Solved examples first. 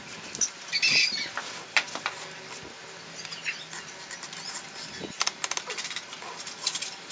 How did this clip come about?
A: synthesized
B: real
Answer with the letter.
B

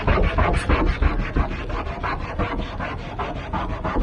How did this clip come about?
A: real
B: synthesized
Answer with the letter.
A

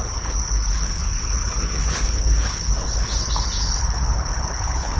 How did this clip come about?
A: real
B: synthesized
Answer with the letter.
B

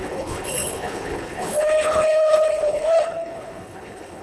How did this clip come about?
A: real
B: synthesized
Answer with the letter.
B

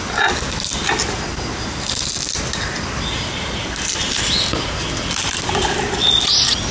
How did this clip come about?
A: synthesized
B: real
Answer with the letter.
B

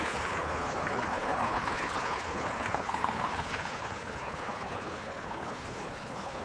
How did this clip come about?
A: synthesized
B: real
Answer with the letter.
A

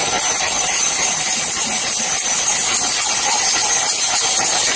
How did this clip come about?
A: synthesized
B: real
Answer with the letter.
B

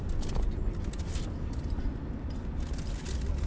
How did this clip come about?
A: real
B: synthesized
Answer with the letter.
A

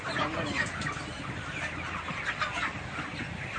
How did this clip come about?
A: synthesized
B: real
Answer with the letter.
B